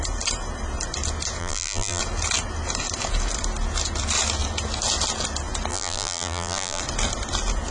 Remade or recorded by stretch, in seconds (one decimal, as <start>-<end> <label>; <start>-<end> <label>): 0.0-1.4 recorded; 1.4-2.0 remade; 2.0-5.7 recorded; 5.7-6.8 remade; 6.8-7.7 recorded